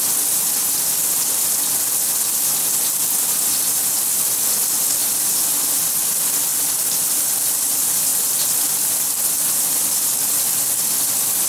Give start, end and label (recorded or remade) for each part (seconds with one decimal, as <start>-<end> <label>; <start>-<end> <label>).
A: 0.0-11.5 recorded